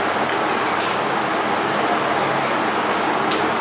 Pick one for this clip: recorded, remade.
recorded